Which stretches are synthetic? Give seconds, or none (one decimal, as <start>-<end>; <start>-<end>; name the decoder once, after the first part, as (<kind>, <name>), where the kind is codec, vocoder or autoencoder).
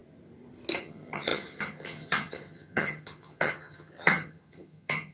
0.8-5.1 (vocoder, HiFi-GAN)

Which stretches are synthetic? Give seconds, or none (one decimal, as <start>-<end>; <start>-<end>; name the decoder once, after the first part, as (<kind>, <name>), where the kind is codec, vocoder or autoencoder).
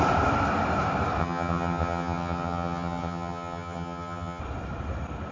1.2-4.4 (vocoder, HiFi-GAN)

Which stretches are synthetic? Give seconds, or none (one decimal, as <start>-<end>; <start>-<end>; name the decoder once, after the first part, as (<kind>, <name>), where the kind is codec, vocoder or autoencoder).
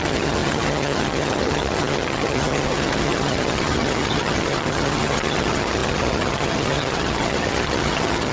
0.0-8.3 (vocoder, HiFi-GAN)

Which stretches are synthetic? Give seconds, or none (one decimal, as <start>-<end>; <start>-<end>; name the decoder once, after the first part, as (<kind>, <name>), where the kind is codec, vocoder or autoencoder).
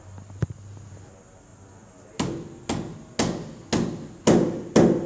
none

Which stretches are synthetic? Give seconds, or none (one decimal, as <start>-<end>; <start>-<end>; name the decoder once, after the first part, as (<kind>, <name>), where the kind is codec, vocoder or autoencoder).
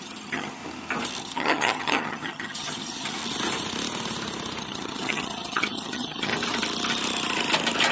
0.0-0.6 (vocoder, HiFi-GAN); 1.2-3.2; 4.6-6.3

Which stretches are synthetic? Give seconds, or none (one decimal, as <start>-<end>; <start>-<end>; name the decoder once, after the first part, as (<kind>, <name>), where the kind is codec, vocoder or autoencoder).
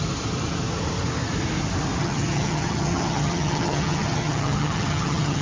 2.0-5.4 (vocoder, HiFi-GAN)